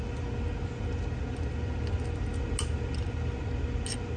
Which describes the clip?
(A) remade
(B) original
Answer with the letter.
B